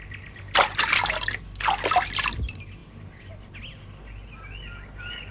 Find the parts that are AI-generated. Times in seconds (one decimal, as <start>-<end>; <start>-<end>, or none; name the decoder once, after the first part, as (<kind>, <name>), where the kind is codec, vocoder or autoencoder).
none